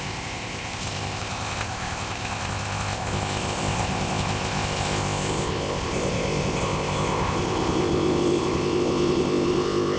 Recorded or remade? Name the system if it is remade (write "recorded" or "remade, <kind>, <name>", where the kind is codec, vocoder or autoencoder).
remade, codec, ZipCodec